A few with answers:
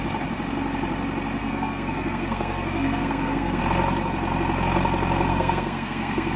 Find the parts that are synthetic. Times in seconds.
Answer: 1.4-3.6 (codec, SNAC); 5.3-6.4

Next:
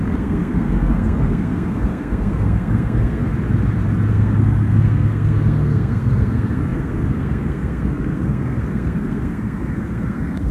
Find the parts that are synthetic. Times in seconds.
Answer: 0.0-3.2 (codec, SNAC); 4.1-10.5

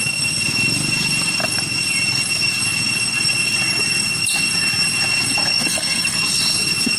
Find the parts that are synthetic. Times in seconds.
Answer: 5.5-6.2 (codec, SNAC)